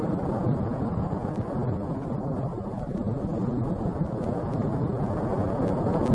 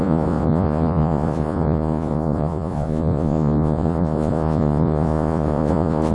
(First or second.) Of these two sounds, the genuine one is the first